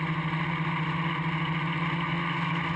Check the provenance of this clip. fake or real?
real